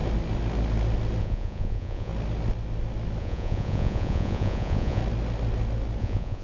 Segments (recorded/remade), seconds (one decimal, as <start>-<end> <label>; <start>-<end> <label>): 0.0-1.2 recorded; 1.2-2.1 remade; 2.1-3.2 recorded; 3.2-5.0 remade; 5.0-6.0 recorded; 6.0-6.4 remade